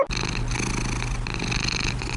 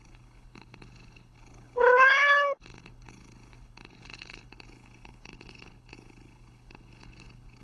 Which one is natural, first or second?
first